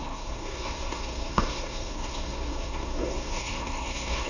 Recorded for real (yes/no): no